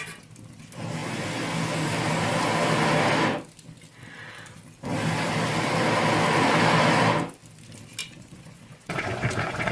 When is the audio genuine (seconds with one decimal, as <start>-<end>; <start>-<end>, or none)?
0.0-8.0